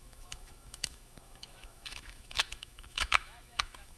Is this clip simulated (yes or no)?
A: yes